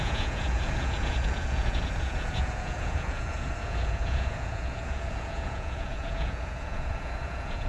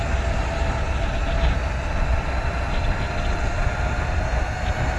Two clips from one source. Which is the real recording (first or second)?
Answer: second